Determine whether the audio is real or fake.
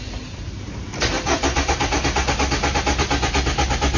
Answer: real